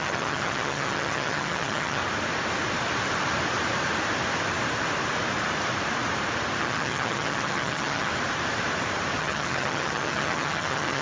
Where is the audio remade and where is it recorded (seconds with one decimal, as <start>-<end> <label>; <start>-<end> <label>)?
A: 0.0-2.0 remade; 2.0-6.6 recorded; 6.6-8.1 remade; 8.1-9.2 recorded; 9.2-11.0 remade